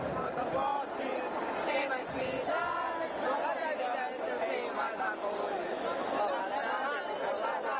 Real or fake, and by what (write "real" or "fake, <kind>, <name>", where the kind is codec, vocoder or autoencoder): real